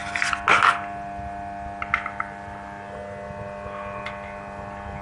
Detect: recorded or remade recorded